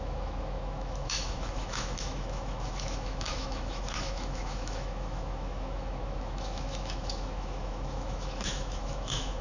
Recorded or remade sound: remade